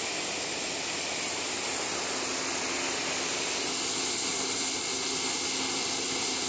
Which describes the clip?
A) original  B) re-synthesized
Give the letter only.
A